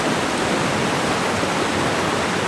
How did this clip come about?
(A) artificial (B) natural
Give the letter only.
B